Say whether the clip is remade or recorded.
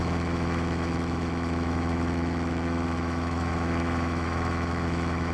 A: remade